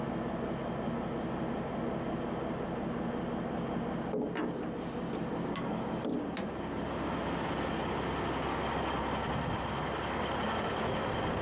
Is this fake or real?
real